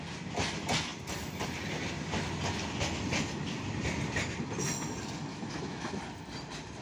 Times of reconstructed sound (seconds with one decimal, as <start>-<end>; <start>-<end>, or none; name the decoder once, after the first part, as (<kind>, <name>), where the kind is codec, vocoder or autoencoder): 5.3-6.0 (autoencoder, DAC-VAE)